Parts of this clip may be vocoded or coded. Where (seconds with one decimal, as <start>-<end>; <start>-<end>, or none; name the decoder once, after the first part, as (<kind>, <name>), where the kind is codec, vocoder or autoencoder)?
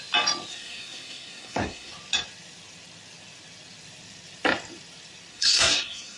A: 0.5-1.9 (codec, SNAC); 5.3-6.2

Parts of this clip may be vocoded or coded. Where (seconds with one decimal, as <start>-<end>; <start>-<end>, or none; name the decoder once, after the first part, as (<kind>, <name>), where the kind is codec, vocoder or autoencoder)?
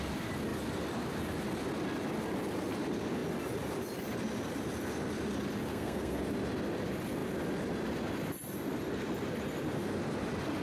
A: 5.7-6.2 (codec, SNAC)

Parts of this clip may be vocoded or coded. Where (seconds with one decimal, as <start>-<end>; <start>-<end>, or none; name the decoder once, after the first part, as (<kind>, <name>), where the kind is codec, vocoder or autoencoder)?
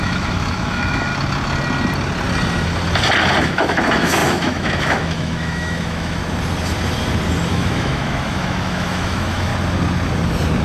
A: 0.0-1.1 (autoencoder, DAC-VAE); 3.4-6.2; 7.5-9.5